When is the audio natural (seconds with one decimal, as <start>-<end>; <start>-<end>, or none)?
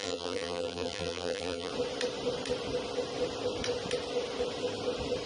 1.7-5.3